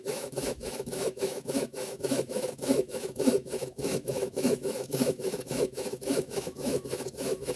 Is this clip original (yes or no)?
no